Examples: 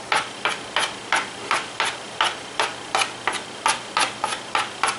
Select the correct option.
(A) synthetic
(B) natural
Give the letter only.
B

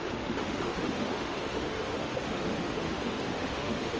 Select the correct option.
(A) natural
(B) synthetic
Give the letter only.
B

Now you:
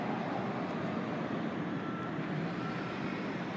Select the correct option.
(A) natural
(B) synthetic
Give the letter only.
A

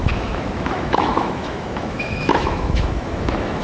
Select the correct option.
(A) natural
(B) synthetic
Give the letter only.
B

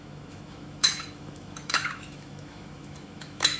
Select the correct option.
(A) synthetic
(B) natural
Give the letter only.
A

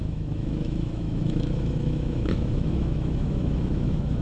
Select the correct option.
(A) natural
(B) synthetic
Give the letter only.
B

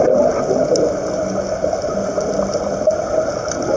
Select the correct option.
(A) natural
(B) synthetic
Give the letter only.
A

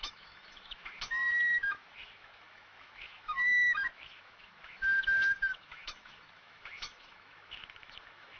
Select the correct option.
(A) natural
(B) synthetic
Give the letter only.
B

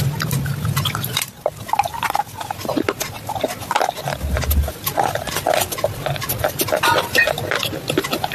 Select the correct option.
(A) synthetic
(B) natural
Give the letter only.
B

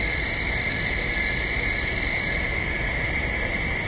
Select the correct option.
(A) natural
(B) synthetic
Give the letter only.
A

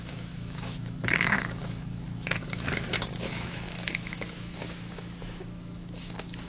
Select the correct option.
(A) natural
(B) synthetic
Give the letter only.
B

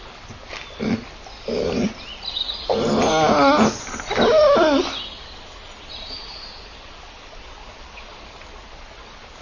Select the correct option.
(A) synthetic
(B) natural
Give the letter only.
B